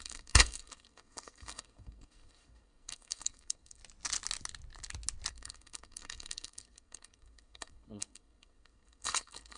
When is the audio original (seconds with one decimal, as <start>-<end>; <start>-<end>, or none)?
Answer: 3.8-5.3